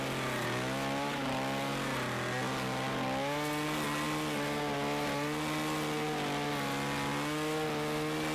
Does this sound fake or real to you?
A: real